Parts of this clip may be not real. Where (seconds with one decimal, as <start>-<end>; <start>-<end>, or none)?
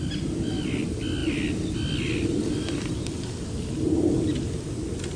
1.2-2.9